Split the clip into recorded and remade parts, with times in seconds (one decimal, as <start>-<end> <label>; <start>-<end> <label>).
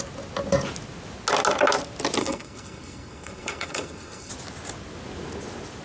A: 0.0-2.2 recorded; 2.2-4.3 remade; 4.3-5.8 recorded